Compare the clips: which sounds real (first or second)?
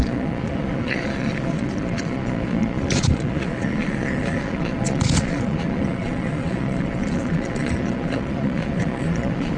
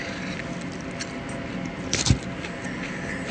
second